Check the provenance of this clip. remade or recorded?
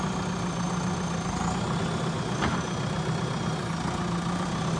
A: recorded